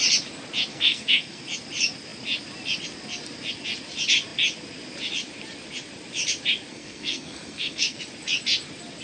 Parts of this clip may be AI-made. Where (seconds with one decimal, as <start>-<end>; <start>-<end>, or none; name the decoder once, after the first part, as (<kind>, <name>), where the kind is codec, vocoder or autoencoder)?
0.7-1.4 (codec, SNAC); 6.7-8.0